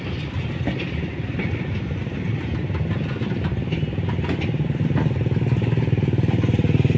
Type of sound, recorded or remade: recorded